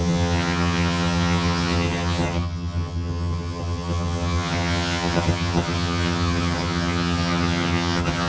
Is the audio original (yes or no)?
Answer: no